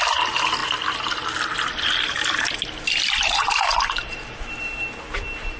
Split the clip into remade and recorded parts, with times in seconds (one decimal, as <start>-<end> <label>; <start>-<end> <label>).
0.0-5.6 recorded